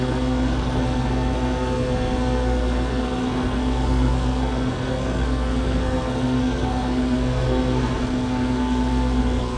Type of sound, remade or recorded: remade